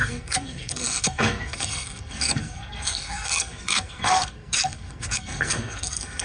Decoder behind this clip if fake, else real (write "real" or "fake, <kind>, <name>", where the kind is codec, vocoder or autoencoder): fake, codec, SNAC